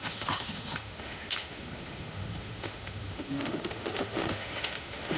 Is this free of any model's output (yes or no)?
no